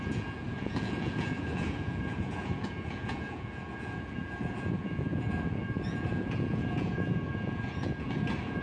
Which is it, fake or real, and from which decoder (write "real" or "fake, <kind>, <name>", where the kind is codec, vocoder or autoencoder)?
fake, vocoder, Vocos